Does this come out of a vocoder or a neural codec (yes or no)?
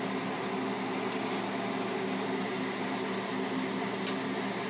no